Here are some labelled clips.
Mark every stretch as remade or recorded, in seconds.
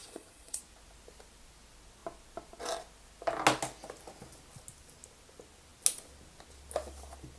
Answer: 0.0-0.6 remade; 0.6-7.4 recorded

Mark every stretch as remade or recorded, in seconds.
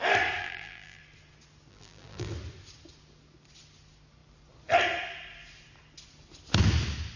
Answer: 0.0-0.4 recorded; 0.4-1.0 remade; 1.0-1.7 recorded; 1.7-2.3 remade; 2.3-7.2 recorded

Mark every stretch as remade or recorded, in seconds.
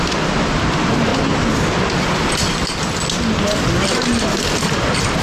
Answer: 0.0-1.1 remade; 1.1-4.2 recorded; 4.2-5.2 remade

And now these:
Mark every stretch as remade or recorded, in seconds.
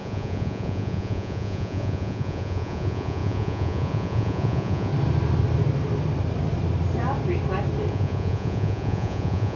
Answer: 0.0-4.9 remade; 4.9-7.9 recorded; 7.9-9.6 remade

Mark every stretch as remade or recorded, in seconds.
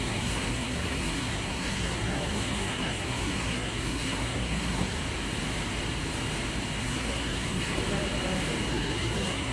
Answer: 0.0-5.0 remade; 5.0-6.8 recorded; 6.8-7.8 remade; 7.8-8.7 recorded; 8.7-9.5 remade